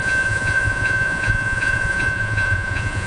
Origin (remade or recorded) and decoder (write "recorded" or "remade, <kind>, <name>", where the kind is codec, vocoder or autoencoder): remade, vocoder, Vocos